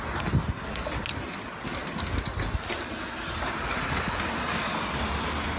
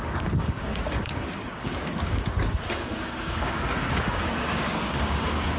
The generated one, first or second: second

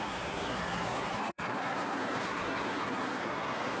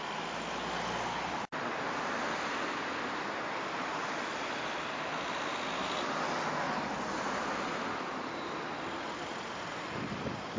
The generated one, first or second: first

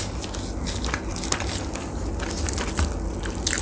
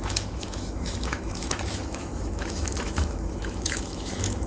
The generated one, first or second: second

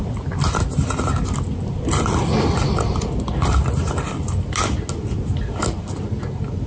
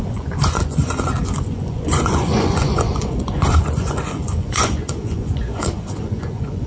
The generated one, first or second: second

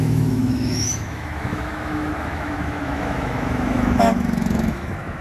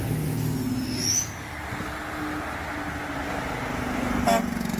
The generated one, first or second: first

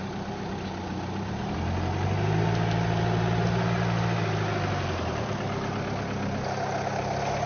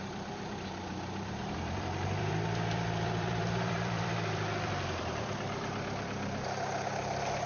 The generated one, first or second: second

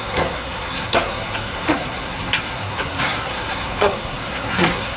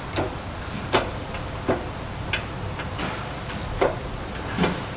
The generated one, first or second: first